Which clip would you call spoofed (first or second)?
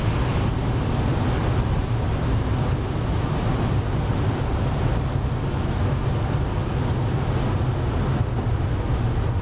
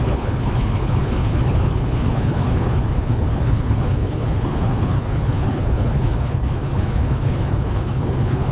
second